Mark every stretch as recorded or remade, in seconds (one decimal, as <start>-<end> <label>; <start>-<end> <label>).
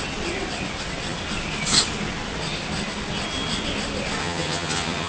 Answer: 0.0-4.2 recorded; 4.2-5.1 remade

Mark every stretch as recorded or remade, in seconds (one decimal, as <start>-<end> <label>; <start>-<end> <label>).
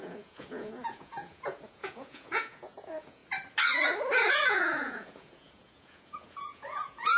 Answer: 0.0-3.2 remade; 3.2-4.3 recorded; 4.3-7.2 remade